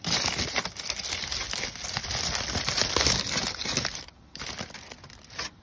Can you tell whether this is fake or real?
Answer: real